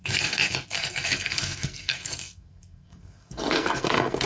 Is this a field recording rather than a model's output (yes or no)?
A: no